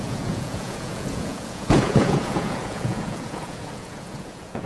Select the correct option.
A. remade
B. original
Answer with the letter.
A